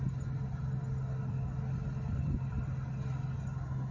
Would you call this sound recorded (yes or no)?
yes